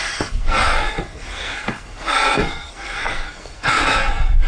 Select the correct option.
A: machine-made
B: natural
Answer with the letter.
A